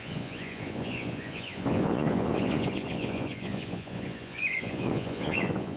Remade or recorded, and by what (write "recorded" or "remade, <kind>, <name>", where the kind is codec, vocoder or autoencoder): remade, vocoder, Vocos